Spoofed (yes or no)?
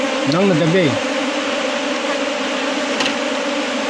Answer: no